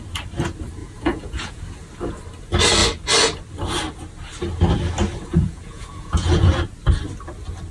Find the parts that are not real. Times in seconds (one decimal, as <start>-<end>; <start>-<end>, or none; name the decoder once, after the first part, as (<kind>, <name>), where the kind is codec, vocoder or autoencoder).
0.8-1.6 (vocoder, Vocos); 5.3-6.5